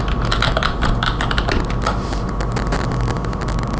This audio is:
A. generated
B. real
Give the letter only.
B